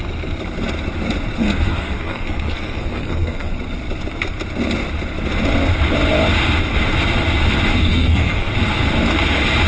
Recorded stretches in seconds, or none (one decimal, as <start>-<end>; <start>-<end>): 0.0-1.4; 3.5-7.9; 8.5-9.7